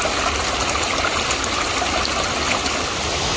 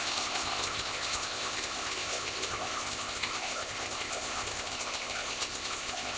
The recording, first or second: first